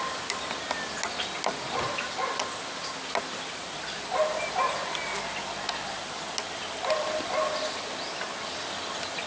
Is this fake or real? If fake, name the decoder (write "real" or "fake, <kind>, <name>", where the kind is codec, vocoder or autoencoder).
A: real